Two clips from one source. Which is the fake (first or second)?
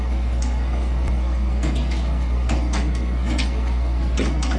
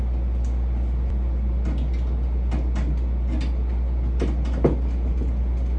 first